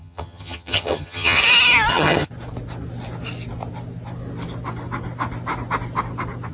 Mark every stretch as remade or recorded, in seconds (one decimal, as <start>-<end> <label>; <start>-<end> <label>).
0.0-1.4 remade; 1.4-1.9 recorded; 1.9-2.3 remade; 2.3-6.5 recorded